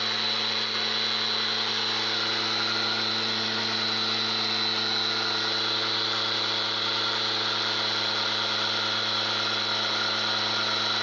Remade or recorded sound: recorded